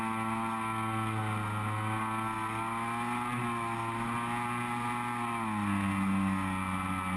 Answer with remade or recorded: recorded